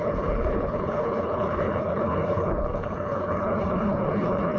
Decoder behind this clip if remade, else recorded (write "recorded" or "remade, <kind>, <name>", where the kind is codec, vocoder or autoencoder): remade, codec, HILCodec